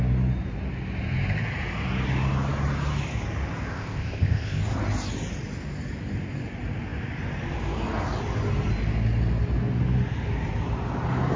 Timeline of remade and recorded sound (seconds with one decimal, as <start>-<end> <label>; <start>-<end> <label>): 0.0-3.7 recorded; 3.7-4.6 remade; 4.6-11.4 recorded